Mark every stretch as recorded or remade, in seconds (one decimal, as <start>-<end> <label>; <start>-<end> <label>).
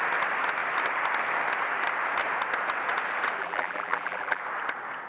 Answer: 0.0-3.4 recorded; 3.4-4.4 remade; 4.4-5.1 recorded